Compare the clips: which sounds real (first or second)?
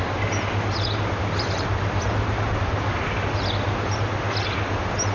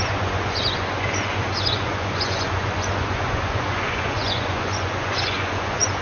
first